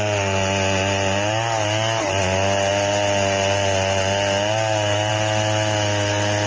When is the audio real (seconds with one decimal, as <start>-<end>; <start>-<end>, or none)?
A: 0.0-6.5